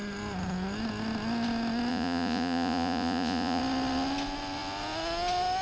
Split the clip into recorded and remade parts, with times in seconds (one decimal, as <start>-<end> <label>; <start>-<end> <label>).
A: 0.0-1.9 recorded; 1.9-3.6 remade; 3.6-5.6 recorded